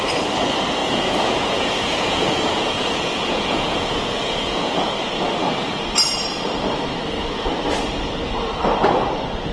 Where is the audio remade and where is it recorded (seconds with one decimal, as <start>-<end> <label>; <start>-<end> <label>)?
0.0-0.8 recorded; 0.8-4.9 remade; 4.9-9.5 recorded